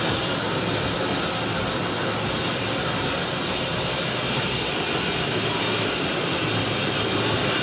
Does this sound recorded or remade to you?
recorded